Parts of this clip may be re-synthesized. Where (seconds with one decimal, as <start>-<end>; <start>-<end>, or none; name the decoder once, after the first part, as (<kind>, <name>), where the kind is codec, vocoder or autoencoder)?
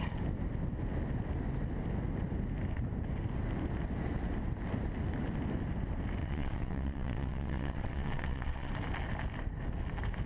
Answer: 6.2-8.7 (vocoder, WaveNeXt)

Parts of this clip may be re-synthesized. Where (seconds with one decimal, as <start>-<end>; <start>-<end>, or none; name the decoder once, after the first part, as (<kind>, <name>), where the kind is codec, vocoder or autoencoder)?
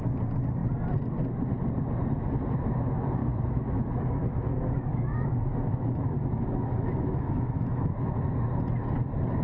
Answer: 3.2-8.1 (autoencoder, DAC-VAE)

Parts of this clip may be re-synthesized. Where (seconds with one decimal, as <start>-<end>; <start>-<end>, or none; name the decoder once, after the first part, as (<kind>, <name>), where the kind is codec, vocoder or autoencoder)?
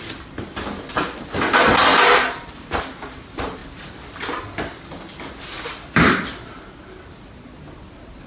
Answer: 1.9-2.8 (vocoder, BigVGAN v2)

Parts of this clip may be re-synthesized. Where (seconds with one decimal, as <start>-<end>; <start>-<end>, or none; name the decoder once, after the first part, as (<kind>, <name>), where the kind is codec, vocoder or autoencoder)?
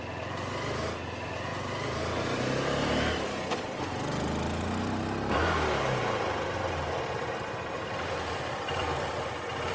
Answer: none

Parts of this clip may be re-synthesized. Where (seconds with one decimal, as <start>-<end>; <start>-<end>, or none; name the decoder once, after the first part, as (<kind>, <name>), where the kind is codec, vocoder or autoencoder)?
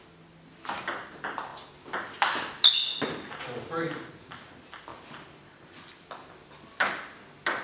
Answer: none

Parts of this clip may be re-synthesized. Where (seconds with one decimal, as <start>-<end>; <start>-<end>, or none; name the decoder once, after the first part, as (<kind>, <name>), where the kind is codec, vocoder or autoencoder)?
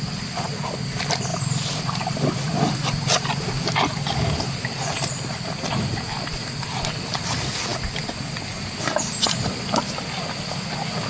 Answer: none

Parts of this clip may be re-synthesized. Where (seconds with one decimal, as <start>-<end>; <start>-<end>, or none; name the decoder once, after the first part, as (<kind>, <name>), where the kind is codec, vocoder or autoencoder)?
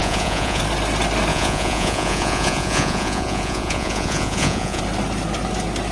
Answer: 0.0-0.6 (vocoder, Vocos); 1.3-4.8